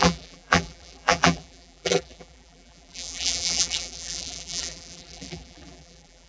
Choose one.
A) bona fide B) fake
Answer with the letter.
B